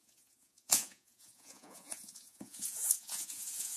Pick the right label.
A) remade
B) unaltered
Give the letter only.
A